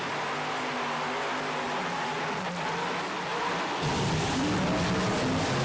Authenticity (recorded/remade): recorded